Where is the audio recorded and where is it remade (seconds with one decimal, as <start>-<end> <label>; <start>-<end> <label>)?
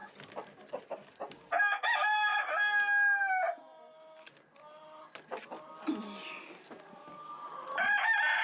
0.0-0.8 remade; 0.8-8.4 recorded